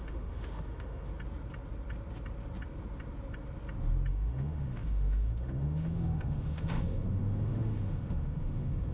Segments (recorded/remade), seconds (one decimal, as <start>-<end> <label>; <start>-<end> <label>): 0.0-1.1 remade; 1.1-4.1 recorded; 4.1-8.9 remade

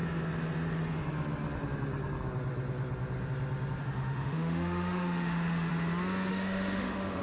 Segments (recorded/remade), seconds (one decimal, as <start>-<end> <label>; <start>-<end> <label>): 0.0-3.8 recorded; 3.8-5.7 remade; 5.7-6.3 recorded; 6.3-7.2 remade

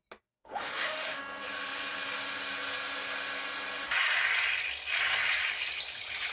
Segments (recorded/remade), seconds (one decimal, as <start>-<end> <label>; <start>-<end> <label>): 0.0-0.4 recorded; 0.4-1.2 remade; 1.2-6.3 recorded

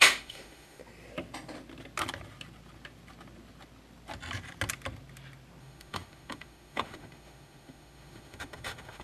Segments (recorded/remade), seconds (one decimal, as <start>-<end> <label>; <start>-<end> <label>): 0.0-0.8 remade; 0.8-5.6 recorded; 5.6-9.0 remade

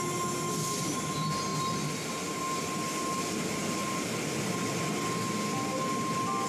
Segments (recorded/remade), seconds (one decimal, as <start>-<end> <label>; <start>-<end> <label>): 0.0-6.5 recorded